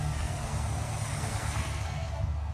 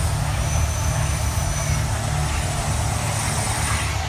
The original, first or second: second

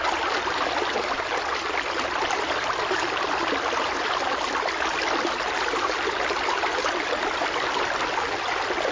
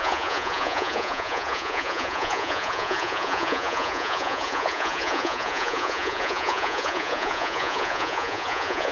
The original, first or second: first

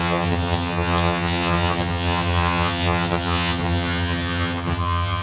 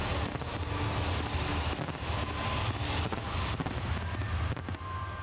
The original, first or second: second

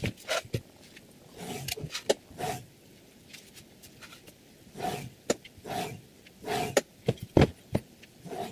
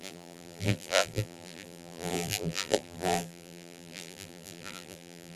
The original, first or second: first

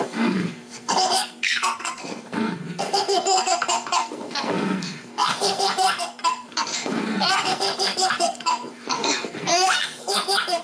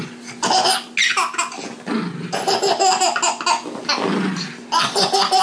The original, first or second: second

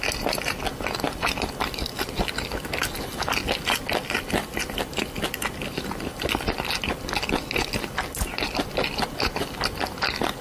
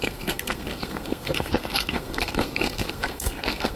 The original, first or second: first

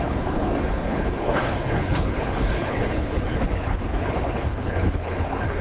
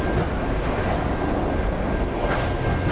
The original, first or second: second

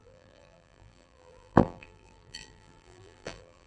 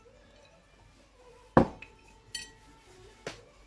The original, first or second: second